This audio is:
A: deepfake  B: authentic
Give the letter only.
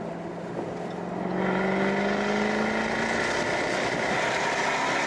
B